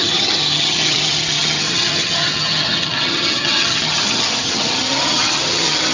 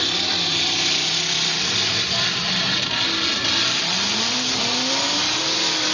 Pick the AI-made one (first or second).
first